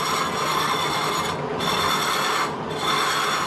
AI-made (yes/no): no